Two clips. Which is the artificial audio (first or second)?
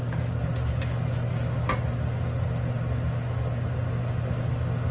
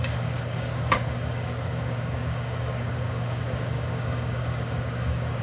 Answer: second